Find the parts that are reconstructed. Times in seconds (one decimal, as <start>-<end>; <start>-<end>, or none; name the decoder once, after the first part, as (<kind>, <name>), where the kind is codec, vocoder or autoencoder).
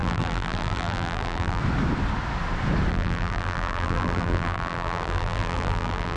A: 0.0-1.6 (vocoder, BigVGAN v2); 2.9-6.2